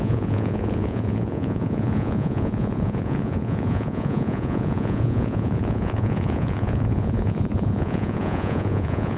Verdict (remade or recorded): remade